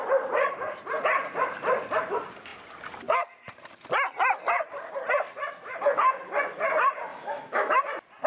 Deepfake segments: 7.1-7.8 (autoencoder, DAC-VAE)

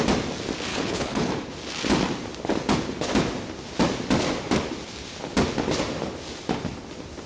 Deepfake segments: 0.7-1.3 (codec, HILCodec)

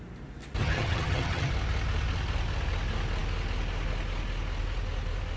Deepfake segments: 0.6-1.5 (vocoder, HiFi-GAN)

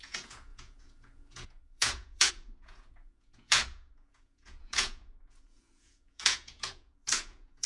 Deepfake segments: 0.0-7.7 (vocoder, Vocos)

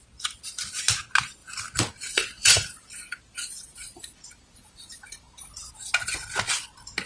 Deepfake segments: 1.4-5.7 (vocoder, BigVGAN v2)

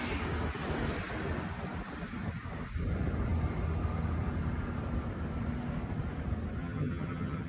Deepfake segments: 6.6-7.5 (vocoder, HiFi-GAN)